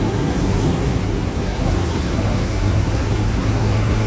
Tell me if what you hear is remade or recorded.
remade